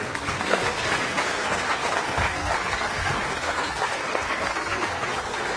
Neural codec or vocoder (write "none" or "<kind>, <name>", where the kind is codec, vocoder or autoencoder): codec, SNAC